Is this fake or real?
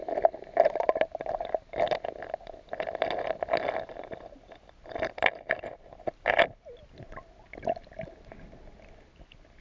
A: real